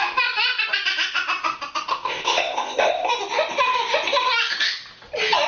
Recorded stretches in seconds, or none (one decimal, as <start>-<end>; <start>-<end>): 0.0-1.9; 3.1-5.5